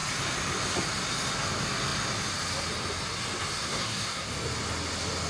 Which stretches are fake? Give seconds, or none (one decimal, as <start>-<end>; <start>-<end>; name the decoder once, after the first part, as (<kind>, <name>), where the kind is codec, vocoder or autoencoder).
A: 3.6-4.3 (codec, SNAC)